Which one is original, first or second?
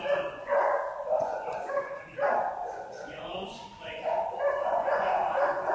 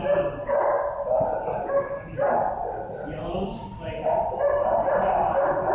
second